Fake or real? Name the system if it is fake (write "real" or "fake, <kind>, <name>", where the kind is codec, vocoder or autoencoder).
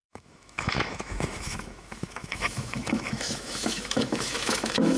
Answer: fake, autoencoder, DAC-VAE